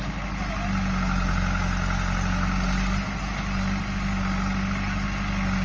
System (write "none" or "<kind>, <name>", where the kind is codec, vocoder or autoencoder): none